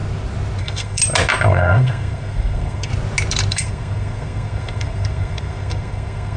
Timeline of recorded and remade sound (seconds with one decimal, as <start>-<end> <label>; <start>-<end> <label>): 0.0-0.6 recorded; 0.6-1.0 remade; 1.0-1.5 recorded; 1.5-2.9 remade; 2.9-3.5 recorded; 3.5-6.4 remade